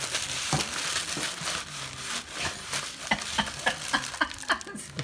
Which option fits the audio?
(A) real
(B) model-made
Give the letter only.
A